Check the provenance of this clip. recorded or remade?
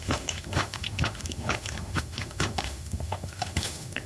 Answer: remade